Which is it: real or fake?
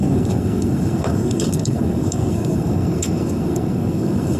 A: fake